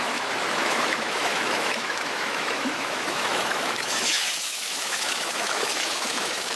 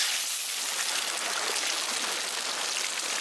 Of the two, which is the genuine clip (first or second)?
second